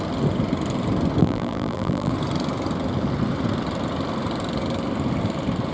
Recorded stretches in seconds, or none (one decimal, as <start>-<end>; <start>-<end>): 0.0-1.2; 2.1-5.7

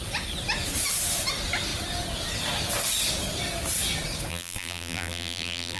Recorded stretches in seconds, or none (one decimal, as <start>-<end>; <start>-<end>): 0.0-4.3

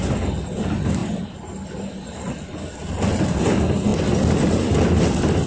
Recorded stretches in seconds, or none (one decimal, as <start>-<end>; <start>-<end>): 0.0-1.0; 1.9-5.5

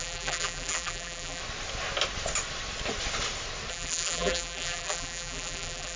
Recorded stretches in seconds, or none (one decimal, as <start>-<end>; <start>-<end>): 1.4-3.7

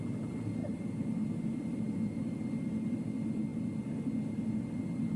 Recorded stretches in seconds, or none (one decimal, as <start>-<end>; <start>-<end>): 0.0-0.6; 2.4-5.2